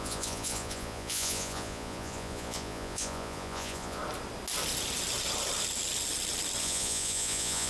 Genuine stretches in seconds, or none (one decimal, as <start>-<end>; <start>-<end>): 4.0-6.6